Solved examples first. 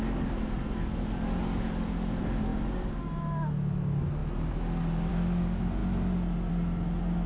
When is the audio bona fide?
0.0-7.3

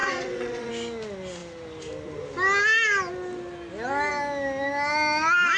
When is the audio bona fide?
0.7-5.6

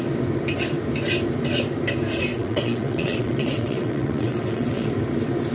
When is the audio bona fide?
0.0-2.3; 4.9-5.5

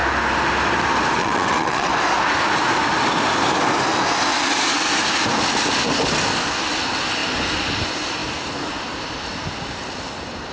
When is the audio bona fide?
0.0-1.2; 1.9-10.5

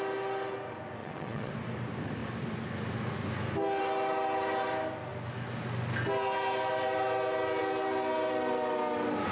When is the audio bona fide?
0.0-1.0; 1.5-9.3

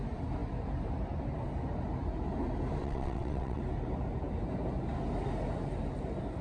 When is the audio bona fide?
0.0-2.8; 3.6-6.4

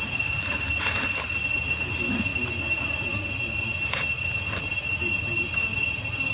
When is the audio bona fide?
0.0-6.3

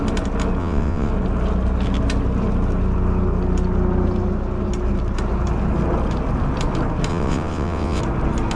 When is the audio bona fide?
0.0-0.6; 1.1-7.1; 8.0-8.6